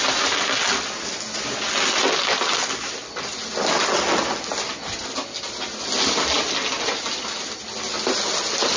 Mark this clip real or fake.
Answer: real